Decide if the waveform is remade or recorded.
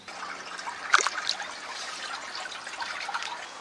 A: recorded